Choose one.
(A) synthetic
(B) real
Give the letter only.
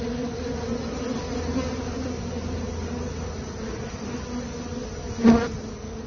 B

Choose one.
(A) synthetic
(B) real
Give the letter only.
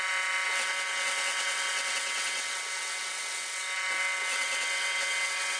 A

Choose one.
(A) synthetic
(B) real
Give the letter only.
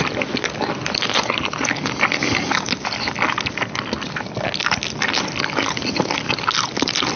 B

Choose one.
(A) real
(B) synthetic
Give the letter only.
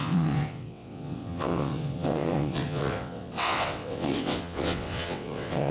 B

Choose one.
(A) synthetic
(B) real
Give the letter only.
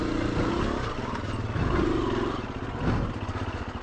B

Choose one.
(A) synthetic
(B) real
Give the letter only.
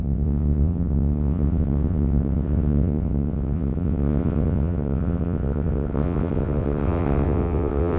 A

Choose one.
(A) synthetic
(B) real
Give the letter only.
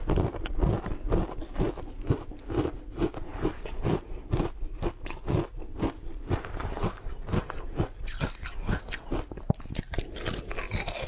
B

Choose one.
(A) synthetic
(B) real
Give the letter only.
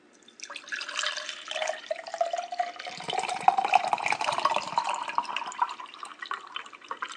B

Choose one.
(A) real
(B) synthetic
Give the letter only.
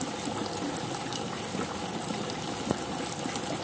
A